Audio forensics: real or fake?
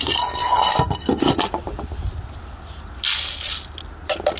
real